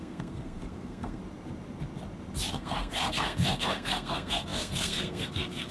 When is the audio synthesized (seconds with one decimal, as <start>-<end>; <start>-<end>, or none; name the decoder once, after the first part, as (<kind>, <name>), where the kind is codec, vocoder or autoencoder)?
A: 0.0-1.2 (codec, SNAC); 2.5-5.7